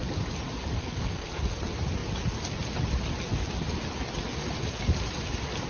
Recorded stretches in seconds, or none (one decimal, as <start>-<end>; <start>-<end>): 0.0-0.8; 1.4-5.7